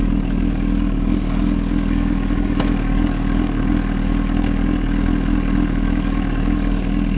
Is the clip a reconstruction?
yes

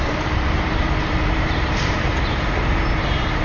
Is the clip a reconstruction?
yes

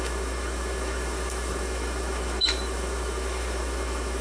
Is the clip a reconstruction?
yes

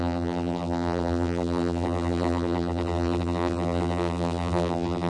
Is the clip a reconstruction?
yes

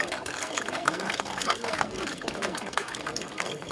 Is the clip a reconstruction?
yes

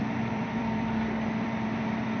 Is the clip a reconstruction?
yes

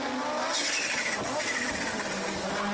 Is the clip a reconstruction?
no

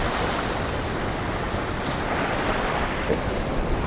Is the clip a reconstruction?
no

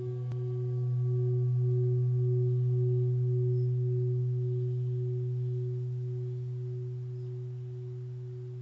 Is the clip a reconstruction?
no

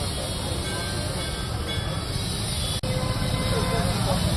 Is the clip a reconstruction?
no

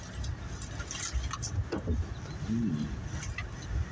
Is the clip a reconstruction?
no